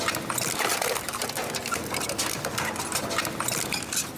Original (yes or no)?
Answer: yes